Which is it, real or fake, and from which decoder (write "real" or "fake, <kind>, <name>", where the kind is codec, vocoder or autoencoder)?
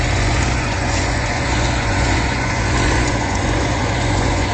fake, vocoder, Vocos